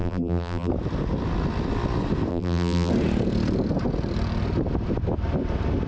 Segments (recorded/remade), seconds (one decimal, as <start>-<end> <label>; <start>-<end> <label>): 0.0-0.7 remade; 0.7-2.3 recorded; 2.3-2.9 remade; 2.9-5.9 recorded